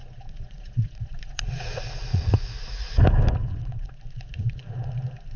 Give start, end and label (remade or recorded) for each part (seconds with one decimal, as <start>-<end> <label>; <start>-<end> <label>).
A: 0.0-2.3 remade; 2.3-3.5 recorded; 3.5-4.9 remade; 4.9-5.4 recorded